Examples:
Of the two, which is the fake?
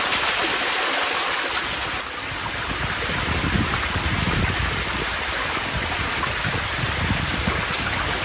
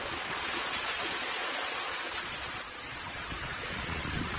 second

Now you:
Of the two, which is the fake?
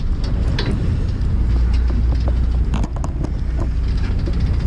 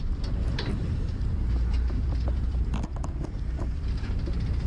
second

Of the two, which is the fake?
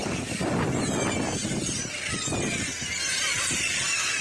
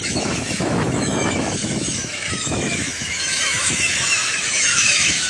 second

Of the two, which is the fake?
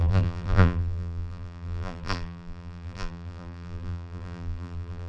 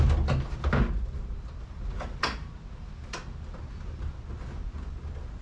first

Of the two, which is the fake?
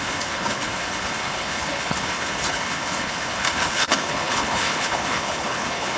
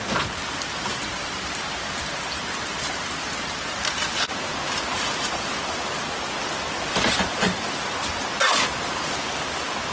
first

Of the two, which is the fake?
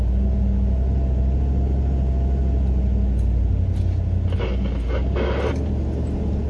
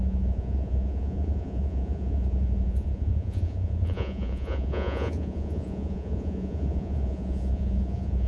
second